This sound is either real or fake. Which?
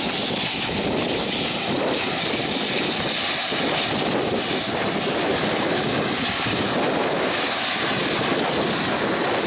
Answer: real